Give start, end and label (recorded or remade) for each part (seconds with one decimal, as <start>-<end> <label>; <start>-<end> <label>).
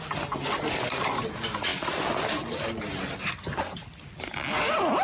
0.0-5.0 recorded